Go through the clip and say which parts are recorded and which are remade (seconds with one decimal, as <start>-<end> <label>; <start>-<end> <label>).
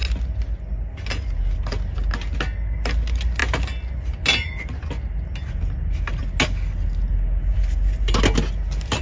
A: 0.0-9.0 recorded